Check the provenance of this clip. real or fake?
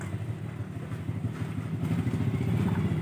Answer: real